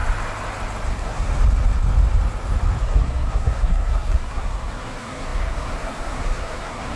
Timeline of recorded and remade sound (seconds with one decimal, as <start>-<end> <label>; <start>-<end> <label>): 0.0-0.9 recorded; 0.9-1.3 remade; 1.3-2.8 recorded; 2.8-7.0 remade